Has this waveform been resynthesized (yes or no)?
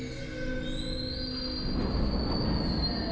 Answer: no